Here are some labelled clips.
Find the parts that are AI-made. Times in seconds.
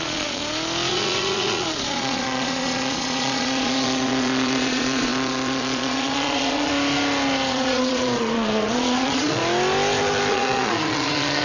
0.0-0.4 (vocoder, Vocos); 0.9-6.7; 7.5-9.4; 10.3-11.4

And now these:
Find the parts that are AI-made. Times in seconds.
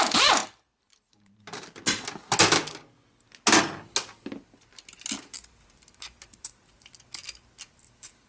0.4-1.4 (vocoder, BigVGAN v2)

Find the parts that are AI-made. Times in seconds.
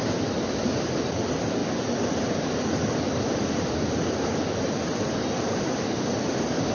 none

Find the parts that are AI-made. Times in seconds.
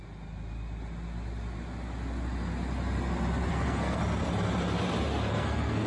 3.5-4.0 (codec, SNAC); 5.3-5.9